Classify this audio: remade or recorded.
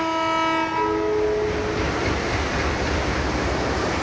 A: recorded